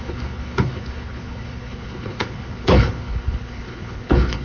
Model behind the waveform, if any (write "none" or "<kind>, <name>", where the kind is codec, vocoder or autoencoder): codec, HILCodec